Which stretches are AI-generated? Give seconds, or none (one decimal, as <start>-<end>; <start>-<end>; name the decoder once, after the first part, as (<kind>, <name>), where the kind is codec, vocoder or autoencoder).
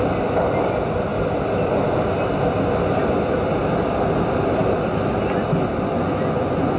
5.9-6.8 (vocoder, Vocos)